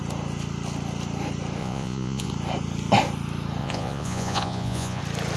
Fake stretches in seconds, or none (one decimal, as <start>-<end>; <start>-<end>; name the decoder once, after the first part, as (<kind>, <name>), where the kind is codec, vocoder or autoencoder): 1.6-2.3 (vocoder, Vocos); 3.6-5.0